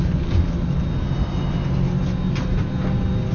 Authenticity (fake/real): real